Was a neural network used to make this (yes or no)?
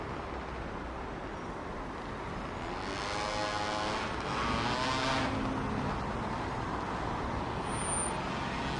no